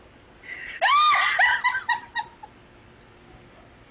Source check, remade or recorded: recorded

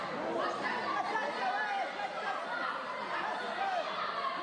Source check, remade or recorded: recorded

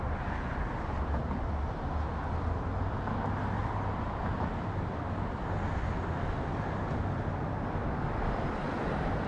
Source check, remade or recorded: recorded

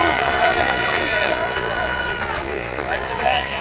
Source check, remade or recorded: remade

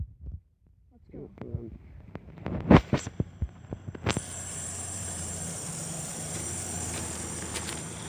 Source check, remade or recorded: remade